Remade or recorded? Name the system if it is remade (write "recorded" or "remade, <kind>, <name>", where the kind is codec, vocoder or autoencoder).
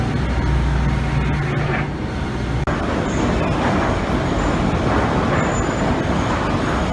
recorded